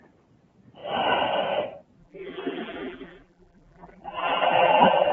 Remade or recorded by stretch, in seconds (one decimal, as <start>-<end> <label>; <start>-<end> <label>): 0.0-2.0 recorded; 2.0-5.1 remade